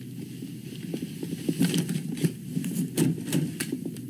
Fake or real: real